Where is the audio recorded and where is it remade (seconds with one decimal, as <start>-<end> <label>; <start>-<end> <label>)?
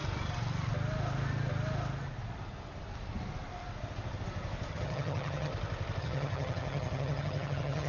0.0-4.7 recorded; 4.7-5.5 remade; 5.5-6.0 recorded; 6.0-7.9 remade